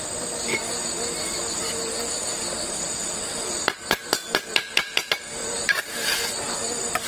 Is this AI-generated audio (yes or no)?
no